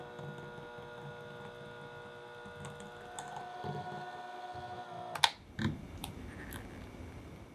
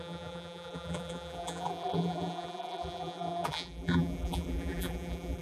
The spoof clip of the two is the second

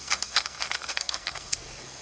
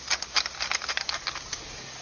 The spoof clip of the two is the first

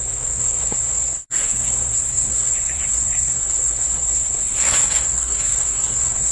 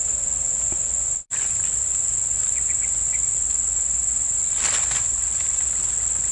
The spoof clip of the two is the first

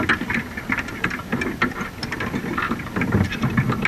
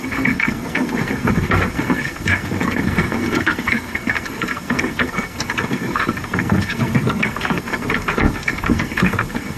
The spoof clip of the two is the second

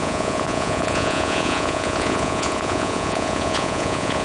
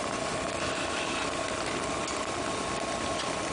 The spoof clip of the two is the first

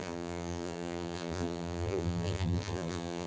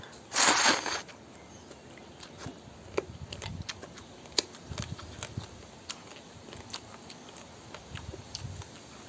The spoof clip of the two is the first